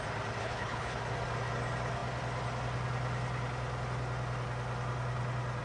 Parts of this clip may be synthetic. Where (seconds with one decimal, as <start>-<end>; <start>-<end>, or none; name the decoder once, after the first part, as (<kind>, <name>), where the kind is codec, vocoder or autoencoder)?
0.4-1.0 (codec, HILCodec)